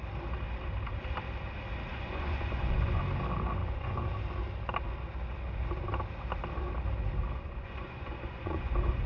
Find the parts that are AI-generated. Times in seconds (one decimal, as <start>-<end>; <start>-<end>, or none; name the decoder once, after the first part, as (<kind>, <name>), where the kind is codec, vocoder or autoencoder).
1.9-3.0 (vocoder, Vocos); 3.6-4.1; 7.6-9.1